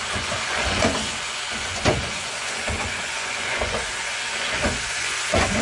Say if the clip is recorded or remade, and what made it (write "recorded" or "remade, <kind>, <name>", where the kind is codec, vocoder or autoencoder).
remade, vocoder, Vocos